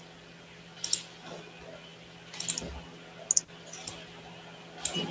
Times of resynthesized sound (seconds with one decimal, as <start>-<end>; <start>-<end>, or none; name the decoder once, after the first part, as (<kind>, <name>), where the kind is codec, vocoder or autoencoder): none